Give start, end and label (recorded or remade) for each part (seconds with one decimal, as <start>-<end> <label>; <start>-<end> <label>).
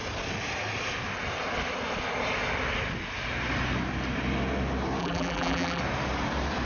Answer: 0.0-5.0 recorded; 5.0-5.8 remade; 5.8-6.7 recorded